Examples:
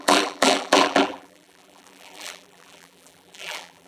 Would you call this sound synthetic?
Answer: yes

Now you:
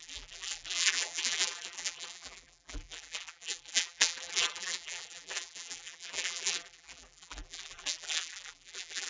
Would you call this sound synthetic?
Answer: yes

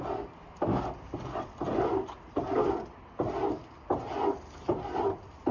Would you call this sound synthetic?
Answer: no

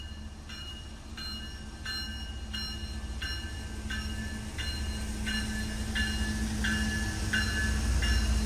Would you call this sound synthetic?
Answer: no